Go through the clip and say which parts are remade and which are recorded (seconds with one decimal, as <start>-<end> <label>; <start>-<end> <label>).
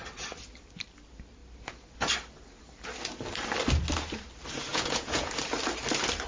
0.0-4.7 recorded; 4.7-5.3 remade; 5.3-6.3 recorded